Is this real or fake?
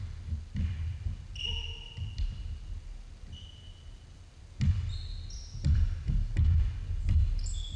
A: real